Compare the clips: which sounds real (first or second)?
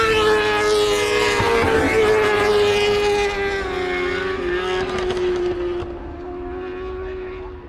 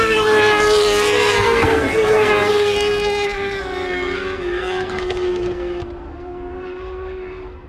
first